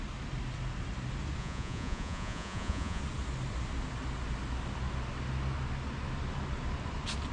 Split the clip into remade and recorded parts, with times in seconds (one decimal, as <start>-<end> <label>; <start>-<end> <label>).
0.0-1.4 recorded; 1.4-3.0 remade; 3.0-7.3 recorded